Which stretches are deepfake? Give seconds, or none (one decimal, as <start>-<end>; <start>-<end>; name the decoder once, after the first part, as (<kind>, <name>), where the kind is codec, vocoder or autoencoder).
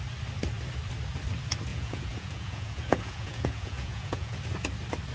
1.7-4.4 (vocoder, Vocos)